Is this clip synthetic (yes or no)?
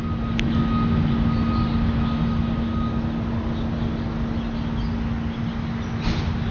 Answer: no